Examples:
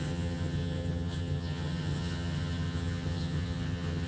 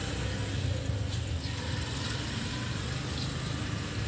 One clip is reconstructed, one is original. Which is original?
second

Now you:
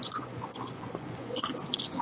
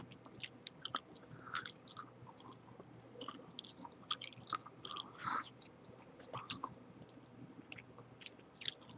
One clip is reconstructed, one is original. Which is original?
second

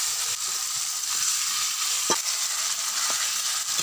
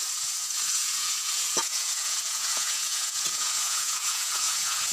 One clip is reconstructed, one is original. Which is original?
first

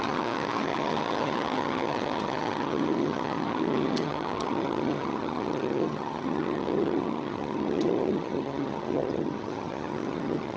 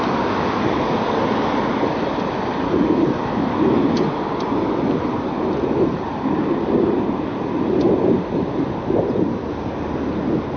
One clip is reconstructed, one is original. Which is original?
second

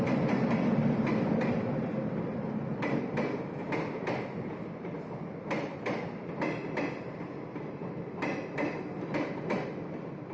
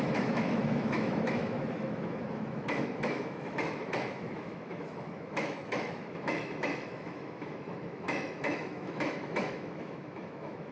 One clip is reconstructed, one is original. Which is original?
first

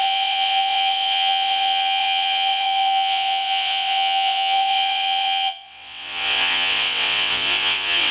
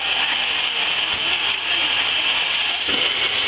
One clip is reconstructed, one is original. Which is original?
second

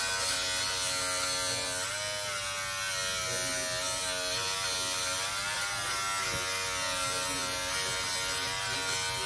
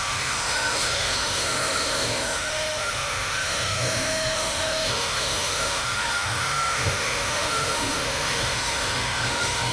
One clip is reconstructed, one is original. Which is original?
first